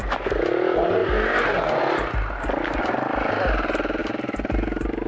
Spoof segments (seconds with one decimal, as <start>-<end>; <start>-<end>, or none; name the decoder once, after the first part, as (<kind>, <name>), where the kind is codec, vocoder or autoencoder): none